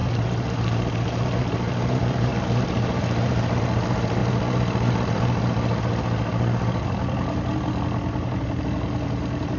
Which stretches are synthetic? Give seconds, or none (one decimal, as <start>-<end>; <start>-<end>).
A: none